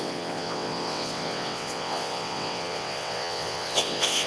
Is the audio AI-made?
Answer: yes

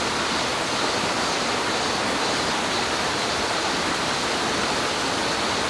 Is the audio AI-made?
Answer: no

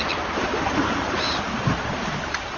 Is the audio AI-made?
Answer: yes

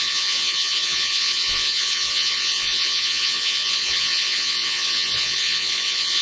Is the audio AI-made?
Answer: yes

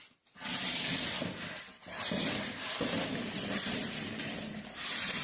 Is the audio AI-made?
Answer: yes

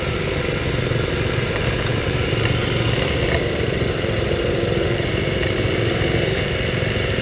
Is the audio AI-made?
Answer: yes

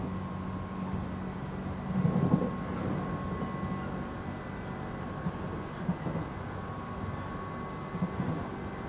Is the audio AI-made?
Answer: no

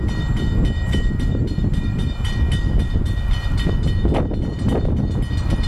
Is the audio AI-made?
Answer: no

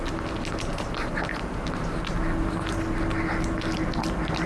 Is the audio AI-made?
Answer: no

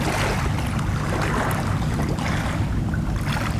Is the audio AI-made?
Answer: no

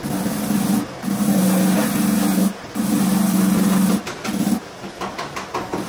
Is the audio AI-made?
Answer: no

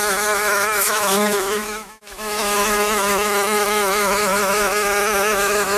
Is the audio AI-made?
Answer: yes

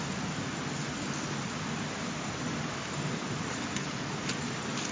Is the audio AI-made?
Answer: no